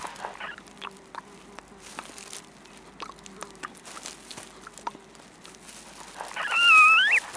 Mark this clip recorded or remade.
recorded